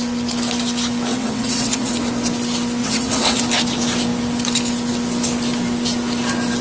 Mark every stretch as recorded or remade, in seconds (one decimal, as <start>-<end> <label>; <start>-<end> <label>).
0.0-1.1 recorded; 1.1-1.9 remade; 1.9-2.8 recorded; 2.8-3.4 remade; 3.4-6.6 recorded